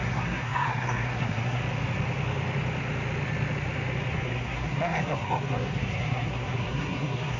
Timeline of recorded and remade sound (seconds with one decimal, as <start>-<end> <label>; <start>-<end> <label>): 0.0-1.6 remade; 1.6-4.1 recorded; 4.1-7.4 remade